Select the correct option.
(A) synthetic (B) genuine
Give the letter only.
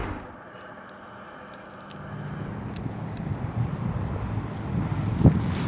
B